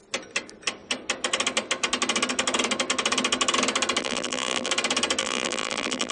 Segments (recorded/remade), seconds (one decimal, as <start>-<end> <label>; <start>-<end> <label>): 0.0-4.0 recorded; 4.0-4.7 remade; 4.7-5.2 recorded; 5.2-6.1 remade